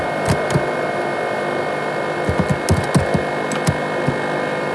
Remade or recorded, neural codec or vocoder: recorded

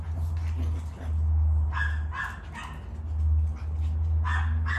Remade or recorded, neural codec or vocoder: recorded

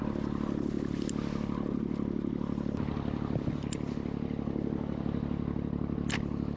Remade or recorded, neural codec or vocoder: recorded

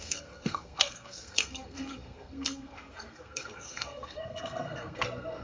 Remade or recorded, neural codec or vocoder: remade, codec, SNAC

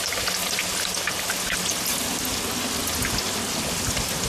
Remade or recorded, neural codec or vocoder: recorded